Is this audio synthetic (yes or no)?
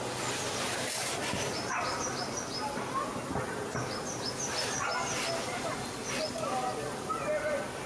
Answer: no